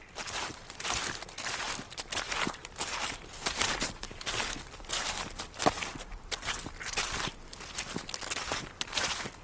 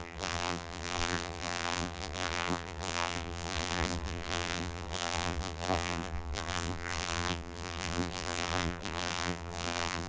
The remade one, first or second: second